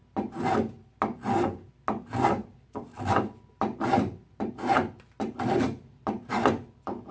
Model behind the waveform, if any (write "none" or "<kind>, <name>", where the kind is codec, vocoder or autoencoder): none